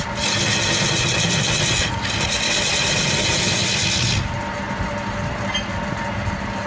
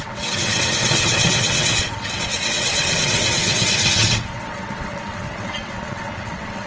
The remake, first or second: second